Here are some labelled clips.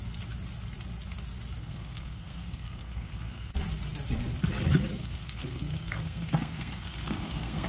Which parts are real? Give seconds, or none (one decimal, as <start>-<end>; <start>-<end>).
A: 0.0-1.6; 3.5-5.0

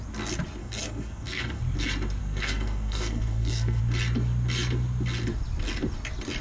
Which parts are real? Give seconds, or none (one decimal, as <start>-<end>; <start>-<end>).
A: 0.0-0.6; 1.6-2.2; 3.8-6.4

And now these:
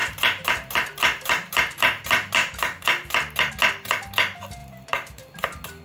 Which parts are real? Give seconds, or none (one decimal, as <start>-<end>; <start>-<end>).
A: 3.5-4.6; 5.2-5.8

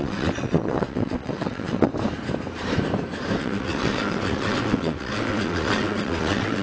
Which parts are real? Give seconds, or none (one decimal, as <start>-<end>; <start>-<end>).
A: 1.9-3.4

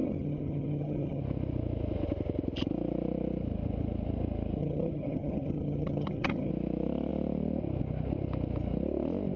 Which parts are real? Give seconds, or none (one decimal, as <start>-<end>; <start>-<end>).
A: 1.2-4.6; 6.5-9.4